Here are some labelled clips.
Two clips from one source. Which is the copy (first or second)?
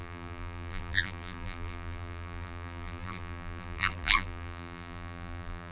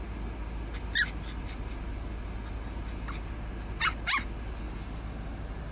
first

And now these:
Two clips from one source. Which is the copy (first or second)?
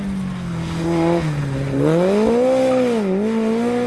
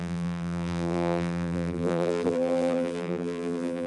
second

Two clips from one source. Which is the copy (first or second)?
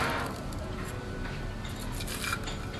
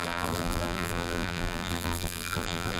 second